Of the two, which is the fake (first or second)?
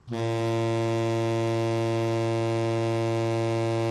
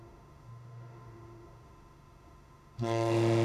second